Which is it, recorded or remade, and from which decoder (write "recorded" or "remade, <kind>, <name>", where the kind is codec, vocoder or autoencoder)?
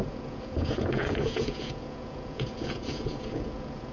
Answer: remade, vocoder, Vocos